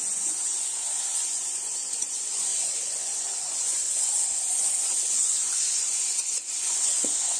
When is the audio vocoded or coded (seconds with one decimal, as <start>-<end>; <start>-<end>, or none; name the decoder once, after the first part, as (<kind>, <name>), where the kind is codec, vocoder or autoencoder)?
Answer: 0.0-7.4 (vocoder, Vocos)